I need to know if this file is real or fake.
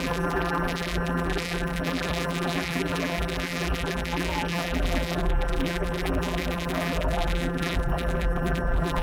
fake